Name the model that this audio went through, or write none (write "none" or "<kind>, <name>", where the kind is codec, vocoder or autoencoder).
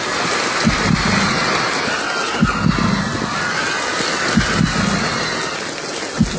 none